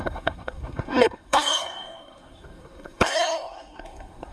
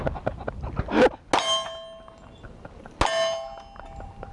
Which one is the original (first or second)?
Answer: second